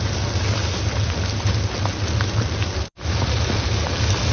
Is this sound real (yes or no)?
yes